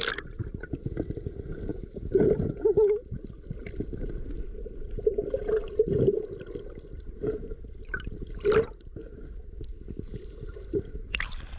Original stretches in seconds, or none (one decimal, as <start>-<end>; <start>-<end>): 0.0-11.6